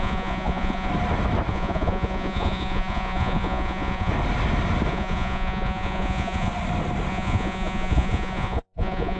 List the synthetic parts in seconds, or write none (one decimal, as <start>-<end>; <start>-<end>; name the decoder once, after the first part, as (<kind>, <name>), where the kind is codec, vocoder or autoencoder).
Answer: 0.0-0.9 (vocoder, Vocos); 1.5-4.1; 4.9-6.5; 7.1-9.2